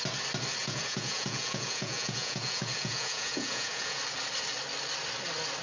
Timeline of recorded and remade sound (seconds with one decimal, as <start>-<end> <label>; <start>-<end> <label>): 0.0-0.6 recorded; 0.6-4.0 remade; 4.0-5.6 recorded